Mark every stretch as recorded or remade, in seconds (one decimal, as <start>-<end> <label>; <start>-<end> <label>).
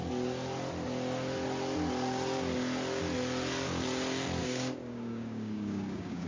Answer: 0.0-4.4 recorded; 4.4-6.3 remade